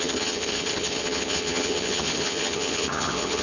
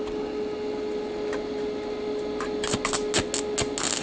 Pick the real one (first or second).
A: second